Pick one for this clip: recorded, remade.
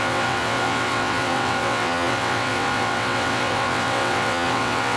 remade